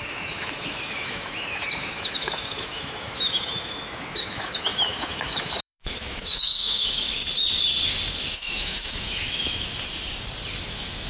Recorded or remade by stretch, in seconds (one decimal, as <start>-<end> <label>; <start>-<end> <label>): 0.0-7.2 remade; 7.2-8.3 recorded; 8.3-9.7 remade; 9.7-10.6 recorded; 10.6-11.1 remade